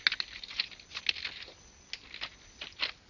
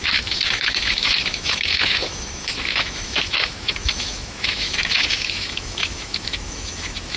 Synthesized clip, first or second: second